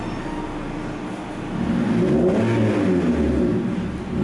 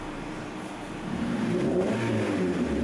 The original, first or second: first